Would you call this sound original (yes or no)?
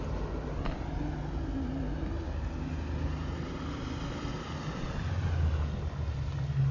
yes